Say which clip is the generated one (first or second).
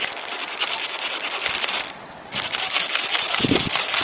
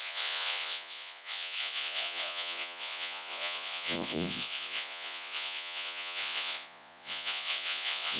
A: second